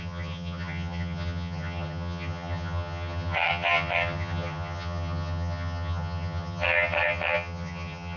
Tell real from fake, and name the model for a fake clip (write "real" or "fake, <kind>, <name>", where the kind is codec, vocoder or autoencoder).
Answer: fake, vocoder, HiFi-GAN